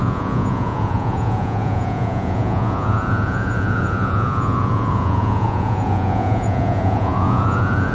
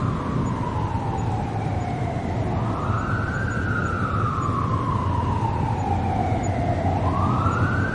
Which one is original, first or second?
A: second